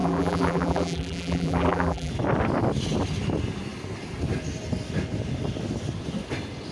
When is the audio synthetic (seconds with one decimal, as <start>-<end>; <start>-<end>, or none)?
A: 0.0-2.1